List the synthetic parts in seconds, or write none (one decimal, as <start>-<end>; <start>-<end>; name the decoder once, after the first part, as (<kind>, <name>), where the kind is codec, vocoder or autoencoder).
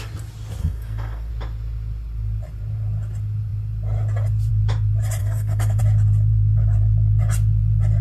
0.6-1.3 (codec, SNAC); 5.2-5.8